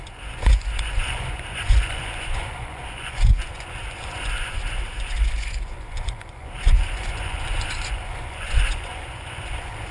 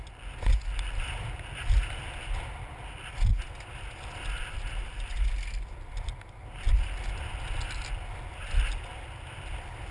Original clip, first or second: second